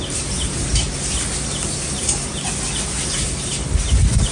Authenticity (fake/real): real